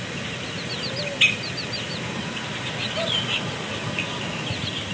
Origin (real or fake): real